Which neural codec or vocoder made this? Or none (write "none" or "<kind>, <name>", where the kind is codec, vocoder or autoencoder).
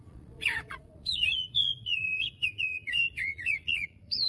vocoder, Vocos